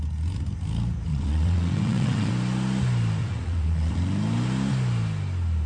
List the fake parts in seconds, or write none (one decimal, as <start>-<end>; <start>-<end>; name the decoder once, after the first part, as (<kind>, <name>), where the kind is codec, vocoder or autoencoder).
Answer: 1.1-2.3 (vocoder, WaveNeXt); 3.2-3.9